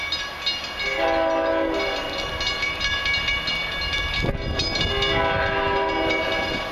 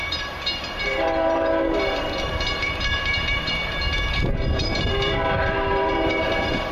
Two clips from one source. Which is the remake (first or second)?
second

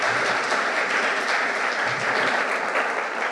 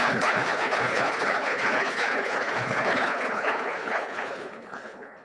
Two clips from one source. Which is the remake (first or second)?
second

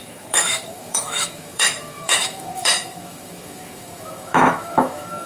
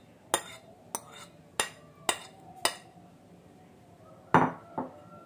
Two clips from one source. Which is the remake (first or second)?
first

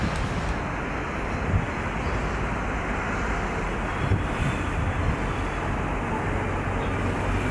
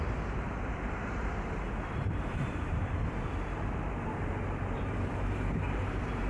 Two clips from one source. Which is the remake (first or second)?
second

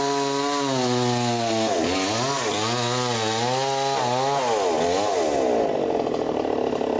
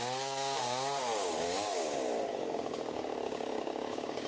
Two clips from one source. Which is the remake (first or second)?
second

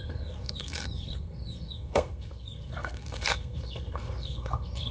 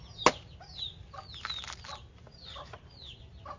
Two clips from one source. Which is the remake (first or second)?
first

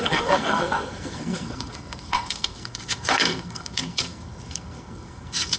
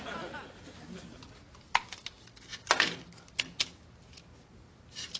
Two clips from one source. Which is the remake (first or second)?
first